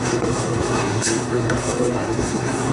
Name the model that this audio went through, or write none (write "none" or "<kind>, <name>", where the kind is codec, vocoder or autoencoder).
codec, SNAC